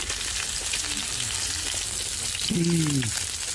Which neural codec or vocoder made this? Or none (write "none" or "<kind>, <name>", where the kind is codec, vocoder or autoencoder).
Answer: none